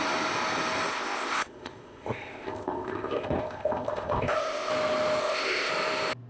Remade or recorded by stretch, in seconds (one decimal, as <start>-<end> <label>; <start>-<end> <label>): 0.0-0.9 recorded; 0.9-4.7 remade; 4.7-5.2 recorded; 5.2-5.7 remade; 5.7-6.3 recorded